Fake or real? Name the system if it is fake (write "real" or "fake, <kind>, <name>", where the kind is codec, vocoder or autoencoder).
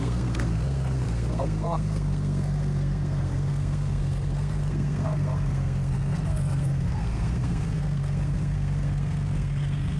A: fake, codec, SNAC